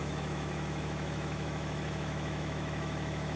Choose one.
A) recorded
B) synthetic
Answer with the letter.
B